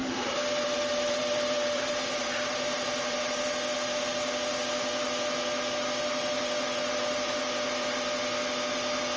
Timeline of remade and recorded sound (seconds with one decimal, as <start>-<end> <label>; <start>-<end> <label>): 0.0-3.5 remade; 3.5-9.2 recorded